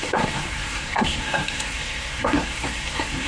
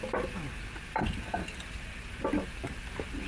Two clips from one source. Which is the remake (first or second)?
first